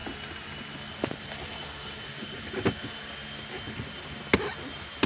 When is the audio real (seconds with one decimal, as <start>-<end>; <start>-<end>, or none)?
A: 0.0-5.1